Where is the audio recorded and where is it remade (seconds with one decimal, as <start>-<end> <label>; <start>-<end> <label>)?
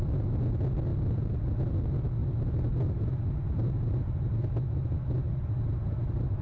0.0-6.4 recorded